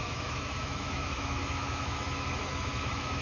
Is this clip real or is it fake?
fake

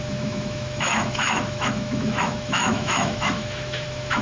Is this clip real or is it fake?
fake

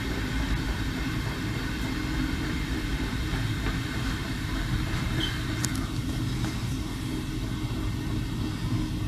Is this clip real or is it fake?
real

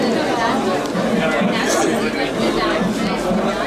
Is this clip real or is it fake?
real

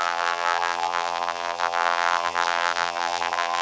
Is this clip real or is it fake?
fake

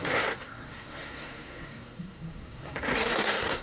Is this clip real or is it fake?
fake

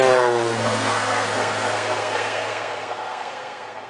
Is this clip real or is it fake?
fake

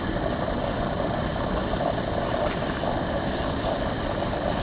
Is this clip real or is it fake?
real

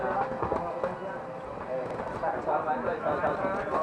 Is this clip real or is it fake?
real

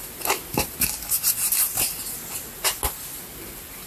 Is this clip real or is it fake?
real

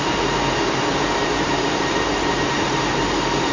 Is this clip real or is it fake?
fake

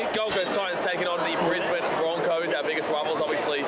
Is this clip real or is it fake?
real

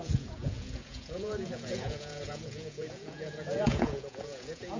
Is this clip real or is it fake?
fake